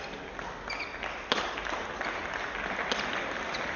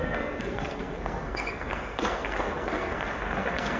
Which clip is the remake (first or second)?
second